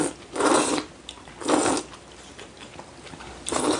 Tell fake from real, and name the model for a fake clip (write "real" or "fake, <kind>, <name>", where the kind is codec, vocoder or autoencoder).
real